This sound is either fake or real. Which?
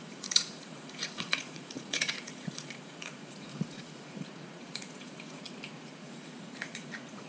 fake